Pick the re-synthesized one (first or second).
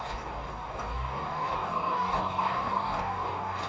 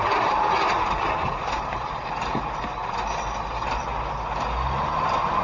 first